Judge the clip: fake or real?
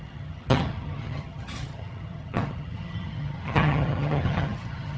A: fake